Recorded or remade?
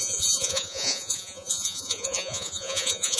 remade